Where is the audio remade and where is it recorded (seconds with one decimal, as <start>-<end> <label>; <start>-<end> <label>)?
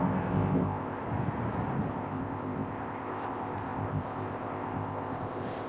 0.0-1.0 remade; 1.0-1.9 recorded; 1.9-5.7 remade